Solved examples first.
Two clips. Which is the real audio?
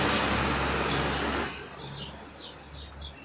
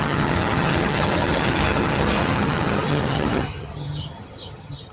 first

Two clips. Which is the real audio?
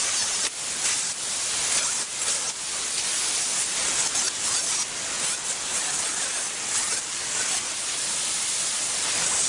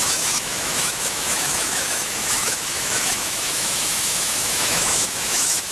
first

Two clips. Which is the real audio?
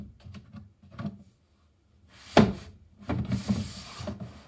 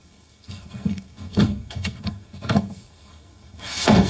first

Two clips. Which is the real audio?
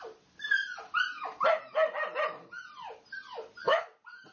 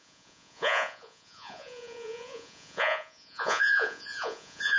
first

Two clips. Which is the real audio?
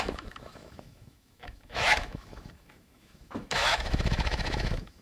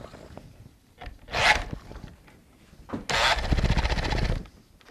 second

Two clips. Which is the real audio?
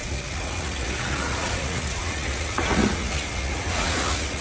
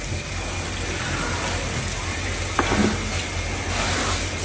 second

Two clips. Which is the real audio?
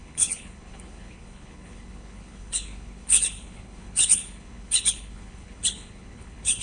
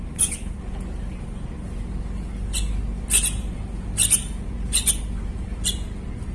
second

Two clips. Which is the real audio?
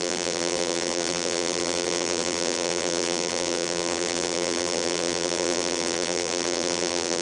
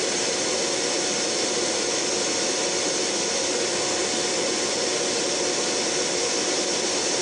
second